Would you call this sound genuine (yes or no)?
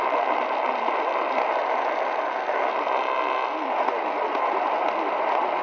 yes